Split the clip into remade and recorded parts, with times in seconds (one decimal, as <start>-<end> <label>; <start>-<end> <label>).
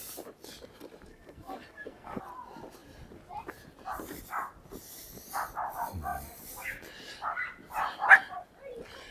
0.0-1.1 recorded; 1.1-2.2 remade; 2.2-9.1 recorded